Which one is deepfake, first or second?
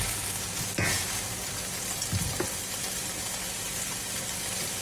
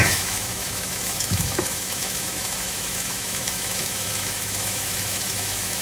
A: second